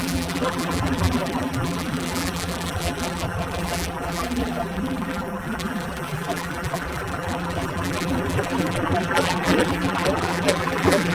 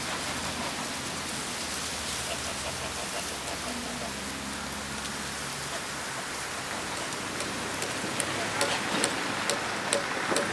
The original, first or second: second